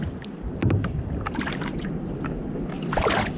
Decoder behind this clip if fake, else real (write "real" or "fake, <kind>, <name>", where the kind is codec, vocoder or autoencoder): real